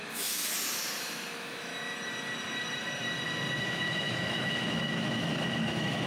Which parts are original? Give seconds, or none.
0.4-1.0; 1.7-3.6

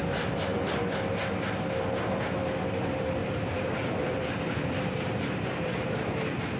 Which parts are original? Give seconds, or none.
0.0-3.2

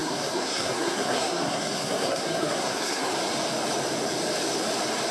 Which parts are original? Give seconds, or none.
3.1-5.1